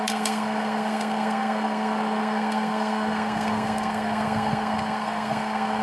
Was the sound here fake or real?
fake